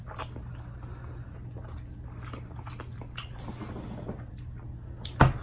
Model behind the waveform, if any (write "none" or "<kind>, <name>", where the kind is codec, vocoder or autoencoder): none